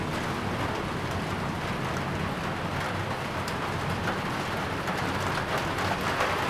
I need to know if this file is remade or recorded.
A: recorded